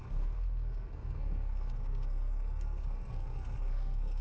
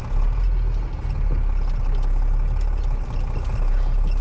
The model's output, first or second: first